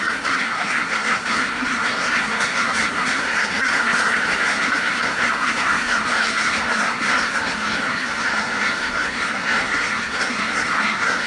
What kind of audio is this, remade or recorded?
remade